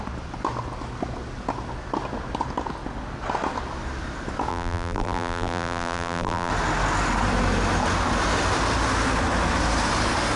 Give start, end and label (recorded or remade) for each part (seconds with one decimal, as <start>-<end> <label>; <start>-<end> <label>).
0.0-4.5 recorded; 4.5-6.5 remade; 6.5-10.4 recorded